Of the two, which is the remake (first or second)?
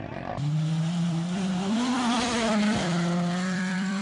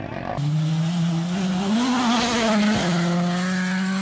first